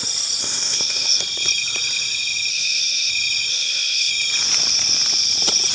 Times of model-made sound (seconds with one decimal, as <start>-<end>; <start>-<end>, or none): 0.4-1.2; 2.5-3.1; 3.5-4.1